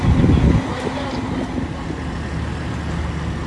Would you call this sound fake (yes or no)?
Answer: no